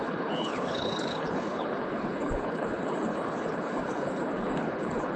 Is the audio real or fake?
fake